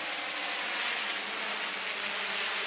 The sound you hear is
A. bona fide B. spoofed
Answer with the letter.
A